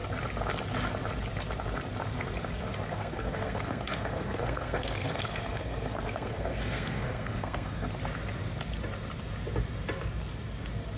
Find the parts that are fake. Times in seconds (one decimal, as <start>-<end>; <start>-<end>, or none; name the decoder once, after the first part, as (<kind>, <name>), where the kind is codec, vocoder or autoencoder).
2.9-7.9 (codec, SNAC)